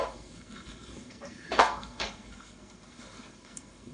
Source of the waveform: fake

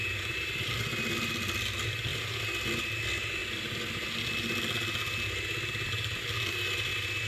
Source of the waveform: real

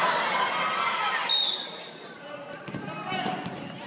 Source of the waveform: real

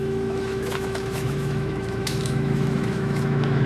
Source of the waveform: fake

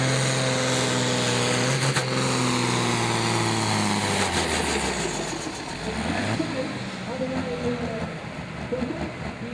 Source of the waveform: real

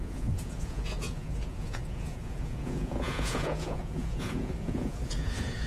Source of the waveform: fake